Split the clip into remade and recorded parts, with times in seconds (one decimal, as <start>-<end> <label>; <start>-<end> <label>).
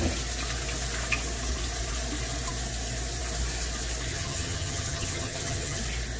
0.0-4.1 recorded; 4.1-5.8 remade; 5.8-6.2 recorded